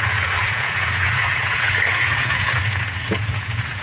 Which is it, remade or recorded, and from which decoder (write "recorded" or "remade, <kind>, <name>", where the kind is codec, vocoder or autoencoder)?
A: remade, vocoder, Vocos